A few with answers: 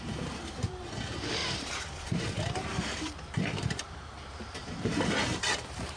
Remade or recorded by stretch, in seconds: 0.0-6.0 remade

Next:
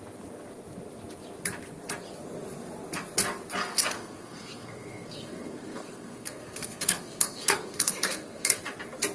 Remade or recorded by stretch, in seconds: 0.0-3.6 recorded; 3.6-8.6 remade; 8.6-9.1 recorded

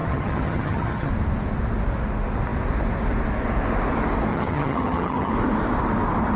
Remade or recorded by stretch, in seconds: 0.0-1.1 remade; 1.1-4.3 recorded; 4.3-5.3 remade; 5.3-6.4 recorded

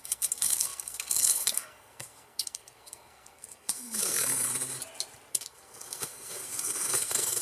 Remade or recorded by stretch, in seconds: 0.0-4.5 remade; 4.5-5.3 recorded; 5.3-7.4 remade

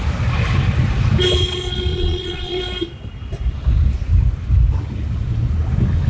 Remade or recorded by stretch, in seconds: 0.0-1.9 recorded; 1.9-2.6 remade; 2.6-6.1 recorded

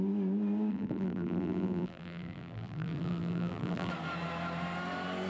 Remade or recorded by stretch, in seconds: 0.0-0.7 recorded; 0.7-3.9 remade; 3.9-5.3 recorded

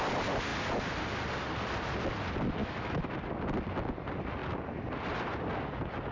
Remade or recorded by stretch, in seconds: 0.0-2.6 recorded; 2.6-3.1 remade; 3.1-6.1 recorded